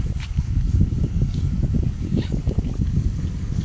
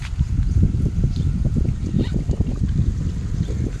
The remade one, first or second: first